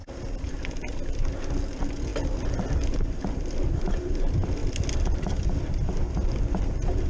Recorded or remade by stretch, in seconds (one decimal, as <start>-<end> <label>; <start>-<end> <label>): 0.0-7.1 recorded